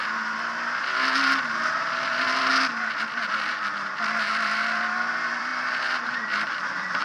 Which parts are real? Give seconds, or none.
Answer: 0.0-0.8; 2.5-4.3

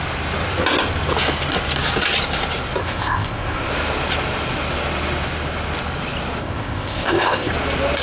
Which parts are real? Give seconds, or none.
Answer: 0.0-2.8; 3.7-6.4; 7.5-8.0

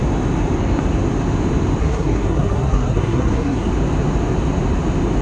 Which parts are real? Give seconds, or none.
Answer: 0.0-1.8; 3.7-5.2